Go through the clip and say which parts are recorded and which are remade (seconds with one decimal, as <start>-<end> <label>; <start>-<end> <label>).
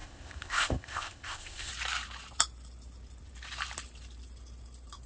0.0-1.7 remade; 1.7-5.1 recorded